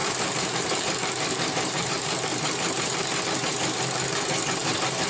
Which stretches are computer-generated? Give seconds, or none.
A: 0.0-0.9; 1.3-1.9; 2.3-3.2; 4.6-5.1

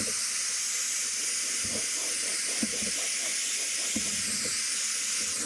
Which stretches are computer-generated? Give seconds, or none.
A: none